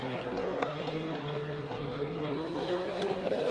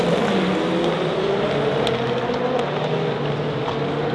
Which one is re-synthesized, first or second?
first